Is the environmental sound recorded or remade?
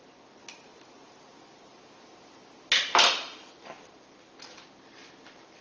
recorded